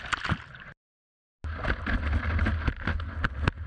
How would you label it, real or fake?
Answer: real